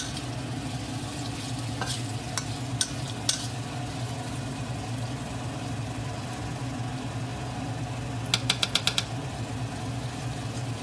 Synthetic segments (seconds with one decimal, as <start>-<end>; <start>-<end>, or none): none